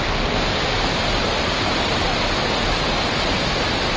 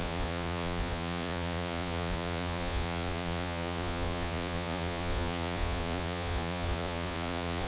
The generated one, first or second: second